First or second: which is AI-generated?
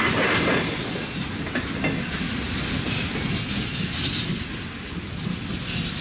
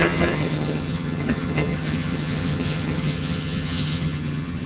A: second